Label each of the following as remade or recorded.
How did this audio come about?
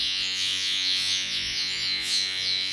remade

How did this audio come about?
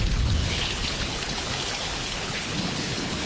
remade